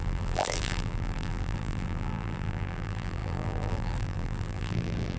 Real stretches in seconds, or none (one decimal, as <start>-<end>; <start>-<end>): none